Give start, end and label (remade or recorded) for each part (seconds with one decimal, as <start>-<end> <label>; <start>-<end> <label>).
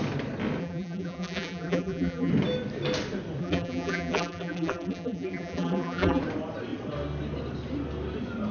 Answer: 0.0-0.6 recorded; 0.6-2.3 remade; 2.3-3.4 recorded; 3.4-6.2 remade; 6.2-8.5 recorded